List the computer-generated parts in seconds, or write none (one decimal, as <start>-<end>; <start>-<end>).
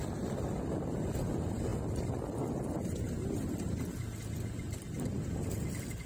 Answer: none